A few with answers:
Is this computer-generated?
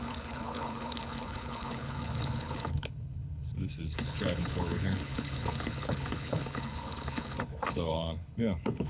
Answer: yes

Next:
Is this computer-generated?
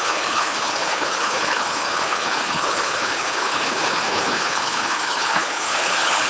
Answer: yes